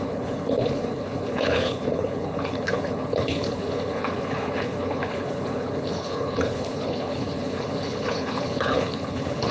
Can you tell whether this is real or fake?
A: fake